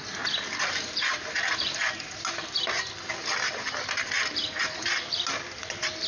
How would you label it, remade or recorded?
recorded